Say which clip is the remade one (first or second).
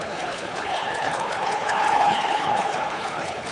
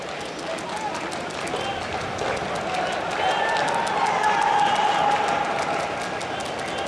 first